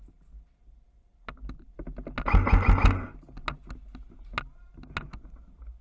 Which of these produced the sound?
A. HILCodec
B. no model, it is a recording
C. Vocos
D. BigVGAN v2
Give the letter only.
B